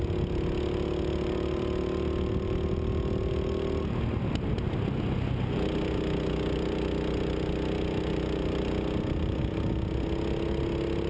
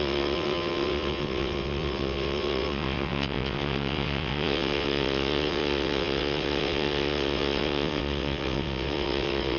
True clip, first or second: first